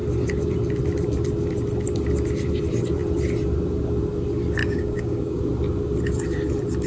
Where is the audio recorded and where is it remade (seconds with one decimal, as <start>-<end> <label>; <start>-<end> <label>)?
0.0-4.6 recorded; 4.6-5.4 remade; 5.4-6.9 recorded